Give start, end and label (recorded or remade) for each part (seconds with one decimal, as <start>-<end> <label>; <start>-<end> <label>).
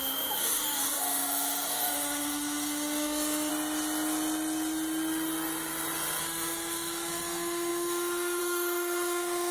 0.0-3.5 remade; 3.5-6.2 recorded; 6.2-9.5 remade